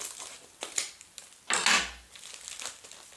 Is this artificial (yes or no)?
no